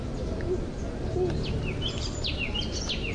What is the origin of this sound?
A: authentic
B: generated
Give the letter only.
A